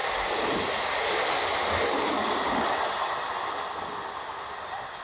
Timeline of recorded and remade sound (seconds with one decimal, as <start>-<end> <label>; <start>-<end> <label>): 0.0-5.0 recorded